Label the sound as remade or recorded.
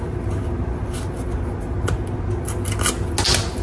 recorded